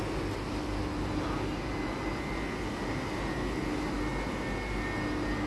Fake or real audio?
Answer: real